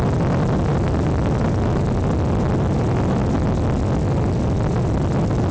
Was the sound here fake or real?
real